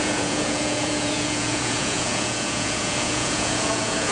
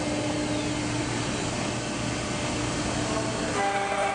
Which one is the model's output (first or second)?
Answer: first